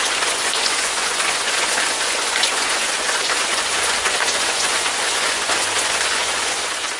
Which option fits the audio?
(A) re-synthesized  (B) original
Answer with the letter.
A